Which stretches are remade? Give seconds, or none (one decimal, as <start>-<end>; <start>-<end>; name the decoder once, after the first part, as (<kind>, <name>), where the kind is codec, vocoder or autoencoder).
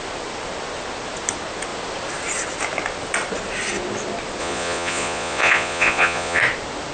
4.4-6.4 (vocoder, Vocos)